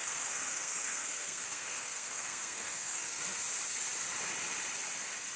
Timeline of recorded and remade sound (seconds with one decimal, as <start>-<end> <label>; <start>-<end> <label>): 0.0-3.2 remade; 3.2-5.4 recorded